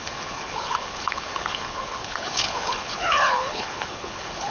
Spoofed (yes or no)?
yes